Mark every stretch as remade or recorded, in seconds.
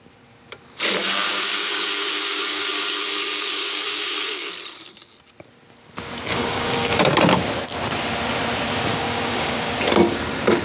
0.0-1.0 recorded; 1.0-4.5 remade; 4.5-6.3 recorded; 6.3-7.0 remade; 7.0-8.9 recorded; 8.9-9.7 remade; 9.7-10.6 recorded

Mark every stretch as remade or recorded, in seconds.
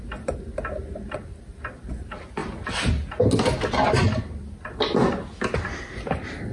0.0-6.5 recorded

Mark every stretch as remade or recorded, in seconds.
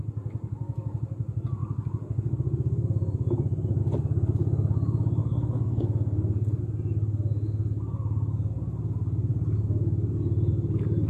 0.0-5.2 recorded; 5.2-6.6 remade; 6.6-11.1 recorded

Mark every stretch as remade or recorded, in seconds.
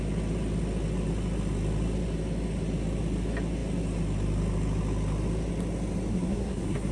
0.0-6.1 recorded; 6.1-6.9 remade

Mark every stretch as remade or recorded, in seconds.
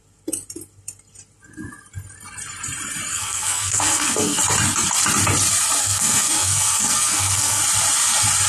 0.0-3.1 recorded; 3.1-4.4 remade; 4.4-5.8 recorded; 5.8-7.6 remade; 7.6-8.5 recorded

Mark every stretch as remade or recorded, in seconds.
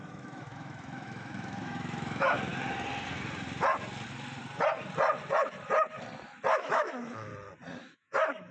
0.0-2.5 remade; 2.5-6.5 recorded; 6.5-7.3 remade; 7.3-7.8 recorded; 7.8-8.5 remade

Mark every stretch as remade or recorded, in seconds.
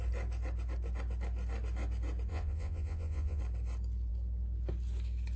0.0-2.3 recorded; 2.3-3.4 remade; 3.4-5.4 recorded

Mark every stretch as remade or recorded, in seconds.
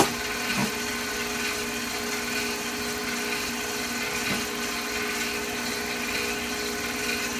0.0-7.4 recorded